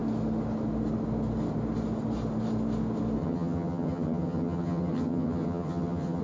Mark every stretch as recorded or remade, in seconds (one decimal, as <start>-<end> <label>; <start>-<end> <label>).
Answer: 0.0-3.2 recorded; 3.2-6.2 remade